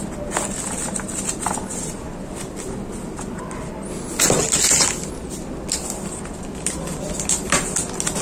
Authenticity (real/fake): real